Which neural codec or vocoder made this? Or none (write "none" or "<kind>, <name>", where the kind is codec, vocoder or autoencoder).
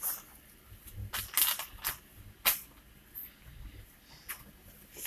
none